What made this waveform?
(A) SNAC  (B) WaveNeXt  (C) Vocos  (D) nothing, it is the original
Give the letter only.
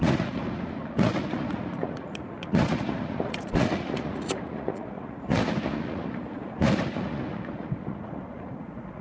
C